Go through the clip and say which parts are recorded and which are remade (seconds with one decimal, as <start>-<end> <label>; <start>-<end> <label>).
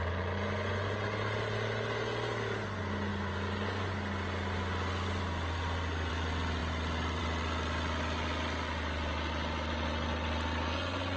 0.0-11.2 recorded